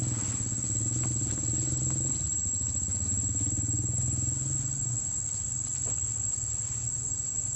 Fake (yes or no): no